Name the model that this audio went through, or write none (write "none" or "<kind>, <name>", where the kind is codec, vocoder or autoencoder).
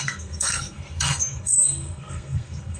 codec, SNAC